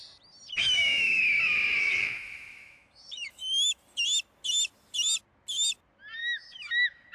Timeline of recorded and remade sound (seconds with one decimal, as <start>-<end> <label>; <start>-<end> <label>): 0.0-0.6 recorded; 0.6-1.2 remade; 1.2-1.8 recorded; 1.8-3.8 remade; 3.8-6.2 recorded; 6.2-7.1 remade